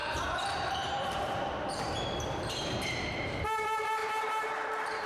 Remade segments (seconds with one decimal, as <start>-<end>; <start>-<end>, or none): 0.0-3.1; 4.0-5.1